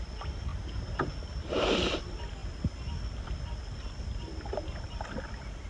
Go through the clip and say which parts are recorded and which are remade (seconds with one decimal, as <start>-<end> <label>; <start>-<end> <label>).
0.0-5.7 recorded